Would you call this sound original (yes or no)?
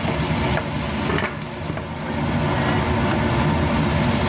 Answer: yes